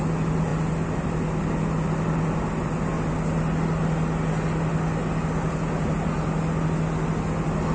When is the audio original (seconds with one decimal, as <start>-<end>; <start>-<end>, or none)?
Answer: 0.0-7.7